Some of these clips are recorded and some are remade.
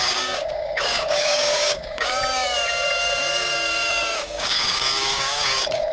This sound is remade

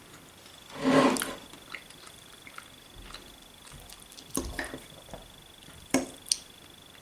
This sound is recorded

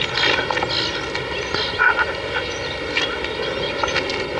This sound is recorded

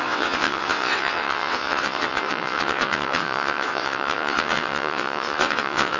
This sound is remade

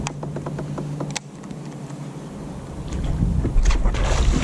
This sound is recorded